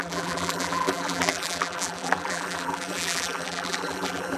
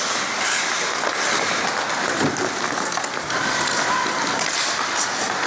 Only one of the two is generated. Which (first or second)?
first